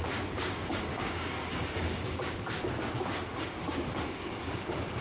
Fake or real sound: fake